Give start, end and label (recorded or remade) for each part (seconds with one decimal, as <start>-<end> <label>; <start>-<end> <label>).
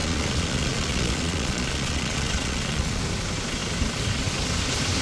0.0-3.0 remade; 3.0-5.0 recorded